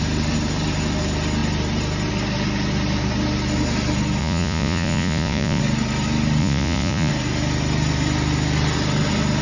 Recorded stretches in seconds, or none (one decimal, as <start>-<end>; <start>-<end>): 0.0-4.2; 5.6-6.4; 7.1-9.4